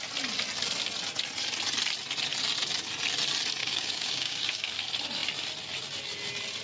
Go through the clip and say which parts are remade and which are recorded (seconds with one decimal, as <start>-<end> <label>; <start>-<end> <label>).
0.0-3.6 recorded; 3.6-4.7 remade; 4.7-6.6 recorded